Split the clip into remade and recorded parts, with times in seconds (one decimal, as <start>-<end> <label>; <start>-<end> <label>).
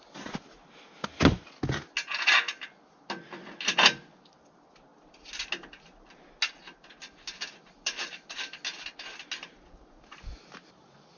0.0-11.2 recorded